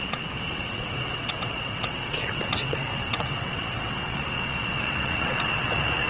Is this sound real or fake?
fake